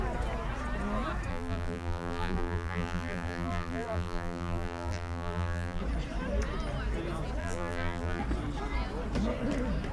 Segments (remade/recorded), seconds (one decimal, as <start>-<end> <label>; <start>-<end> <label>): 0.0-1.3 recorded; 1.3-5.8 remade; 5.8-7.4 recorded; 7.4-8.2 remade; 8.2-9.9 recorded